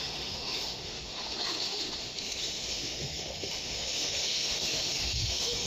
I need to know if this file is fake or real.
fake